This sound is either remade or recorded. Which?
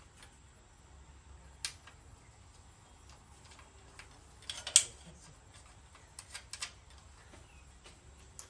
recorded